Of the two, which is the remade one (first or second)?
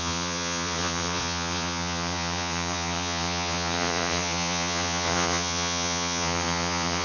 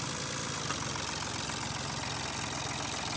first